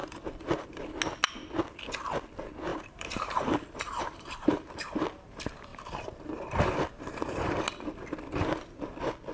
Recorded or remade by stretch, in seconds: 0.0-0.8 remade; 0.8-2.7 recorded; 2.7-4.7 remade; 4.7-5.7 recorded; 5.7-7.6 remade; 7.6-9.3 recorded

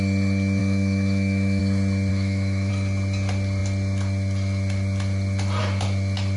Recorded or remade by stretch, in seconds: 0.0-0.6 recorded; 0.6-1.6 remade; 1.6-2.1 recorded; 2.1-2.7 remade; 2.7-6.4 recorded

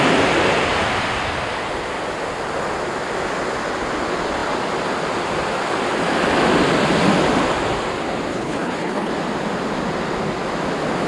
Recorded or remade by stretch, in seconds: 0.0-8.3 recorded; 8.3-9.1 remade; 9.1-11.1 recorded

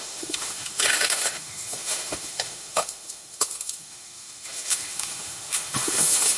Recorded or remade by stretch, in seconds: 0.0-6.4 remade

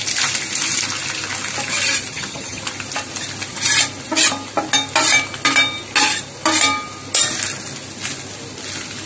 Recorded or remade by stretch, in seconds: 0.0-2.1 recorded; 2.1-2.6 remade; 2.6-9.1 recorded

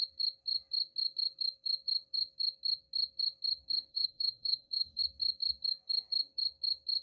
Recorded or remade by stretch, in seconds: 0.0-3.9 recorded; 3.9-5.0 remade; 5.0-7.0 recorded